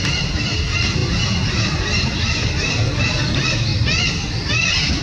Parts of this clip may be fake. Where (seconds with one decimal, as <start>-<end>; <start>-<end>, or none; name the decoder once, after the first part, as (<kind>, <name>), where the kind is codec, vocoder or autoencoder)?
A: none